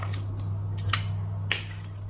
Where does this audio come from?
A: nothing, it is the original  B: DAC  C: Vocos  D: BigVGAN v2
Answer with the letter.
A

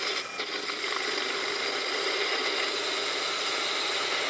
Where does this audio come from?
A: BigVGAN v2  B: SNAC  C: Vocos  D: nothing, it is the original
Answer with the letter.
D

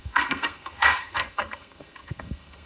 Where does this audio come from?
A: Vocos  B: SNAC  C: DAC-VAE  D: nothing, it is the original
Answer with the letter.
B